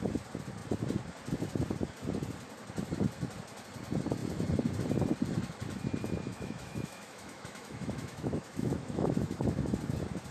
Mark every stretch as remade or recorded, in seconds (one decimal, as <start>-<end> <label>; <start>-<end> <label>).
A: 0.0-6.3 recorded; 6.3-9.7 remade; 9.7-10.3 recorded